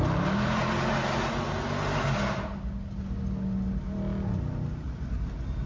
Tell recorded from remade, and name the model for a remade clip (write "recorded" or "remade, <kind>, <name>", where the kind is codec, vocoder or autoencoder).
recorded